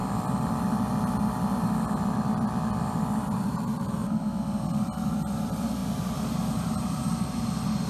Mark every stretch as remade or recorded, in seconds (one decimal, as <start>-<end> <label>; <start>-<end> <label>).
0.0-3.4 recorded; 3.4-4.0 remade; 4.0-4.7 recorded; 4.7-7.9 remade